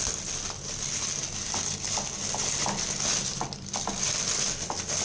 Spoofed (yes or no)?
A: no